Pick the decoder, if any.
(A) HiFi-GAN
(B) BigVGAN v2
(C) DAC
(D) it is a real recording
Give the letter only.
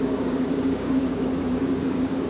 C